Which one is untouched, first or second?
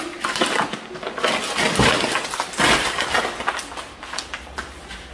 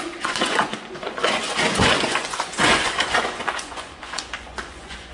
first